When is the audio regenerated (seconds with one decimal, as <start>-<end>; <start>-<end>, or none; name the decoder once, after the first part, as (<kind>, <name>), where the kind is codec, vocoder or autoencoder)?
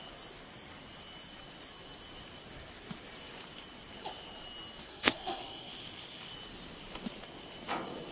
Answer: 4.9-5.7 (codec, SNAC)